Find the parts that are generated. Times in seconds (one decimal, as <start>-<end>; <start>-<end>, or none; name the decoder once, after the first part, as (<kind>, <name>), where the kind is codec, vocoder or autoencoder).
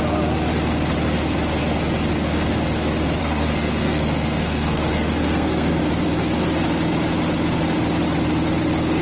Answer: 3.2-5.8 (codec, SNAC)